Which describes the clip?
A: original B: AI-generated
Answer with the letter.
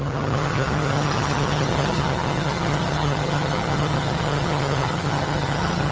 B